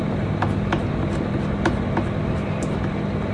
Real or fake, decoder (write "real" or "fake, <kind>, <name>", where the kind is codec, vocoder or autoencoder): real